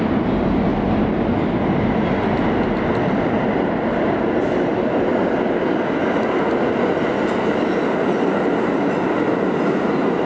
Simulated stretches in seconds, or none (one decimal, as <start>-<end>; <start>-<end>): none